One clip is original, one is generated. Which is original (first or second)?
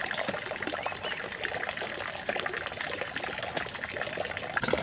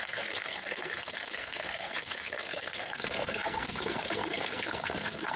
first